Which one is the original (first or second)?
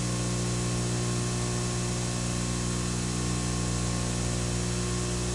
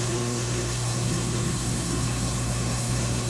first